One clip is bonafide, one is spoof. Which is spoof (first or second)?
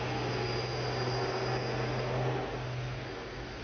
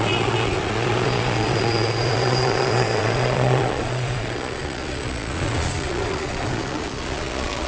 second